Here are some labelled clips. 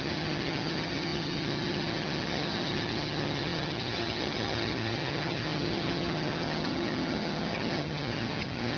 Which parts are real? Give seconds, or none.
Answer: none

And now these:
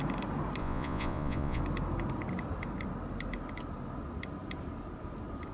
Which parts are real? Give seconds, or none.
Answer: 0.0-0.6; 1.6-5.5

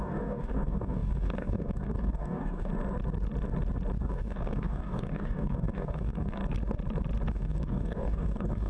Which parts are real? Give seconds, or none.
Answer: 2.7-4.0; 6.4-7.3

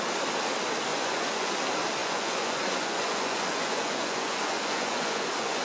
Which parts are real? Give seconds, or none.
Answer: 0.0-0.9; 1.5-2.0